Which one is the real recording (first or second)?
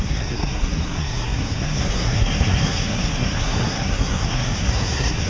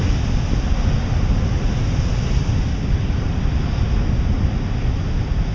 second